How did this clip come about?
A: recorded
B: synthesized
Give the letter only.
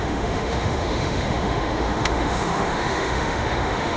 B